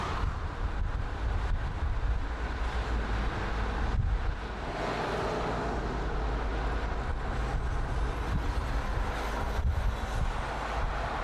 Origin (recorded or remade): recorded